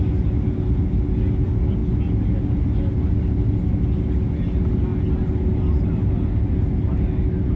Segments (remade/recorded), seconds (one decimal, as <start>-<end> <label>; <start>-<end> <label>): 0.0-7.6 recorded